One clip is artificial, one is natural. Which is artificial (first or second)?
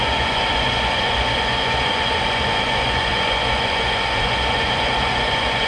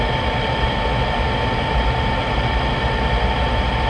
first